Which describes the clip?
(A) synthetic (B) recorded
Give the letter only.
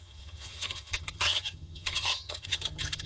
A